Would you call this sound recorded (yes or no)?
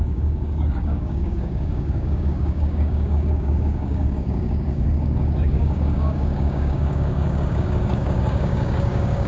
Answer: no